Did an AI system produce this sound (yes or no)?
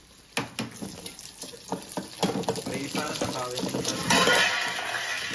no